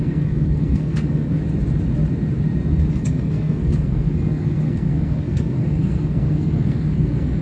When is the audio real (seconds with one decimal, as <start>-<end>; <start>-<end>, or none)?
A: 1.4-2.9